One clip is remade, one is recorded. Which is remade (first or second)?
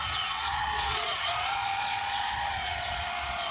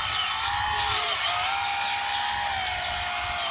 first